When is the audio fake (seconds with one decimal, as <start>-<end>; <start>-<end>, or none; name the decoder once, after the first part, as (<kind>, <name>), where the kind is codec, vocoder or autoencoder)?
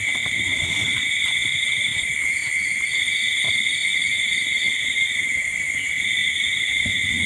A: none